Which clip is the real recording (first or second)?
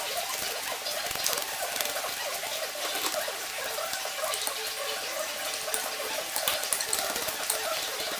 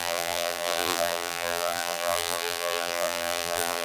first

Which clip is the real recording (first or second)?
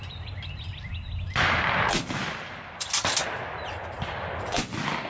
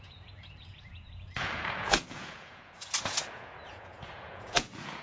first